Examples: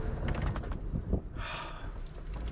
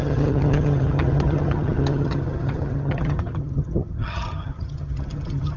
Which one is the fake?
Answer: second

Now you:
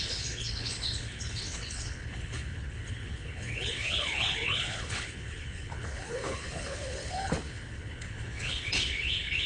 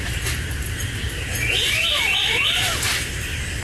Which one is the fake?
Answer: first